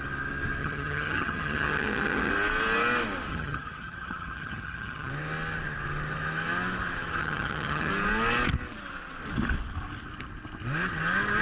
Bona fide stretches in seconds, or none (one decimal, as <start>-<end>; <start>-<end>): 0.0-0.6; 2.3-3.3; 5.1-7.2; 7.9-11.4